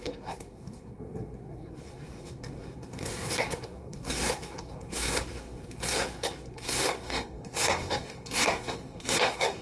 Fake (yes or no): yes